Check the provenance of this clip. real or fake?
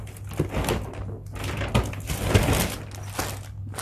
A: real